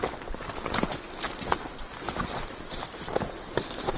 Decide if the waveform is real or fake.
real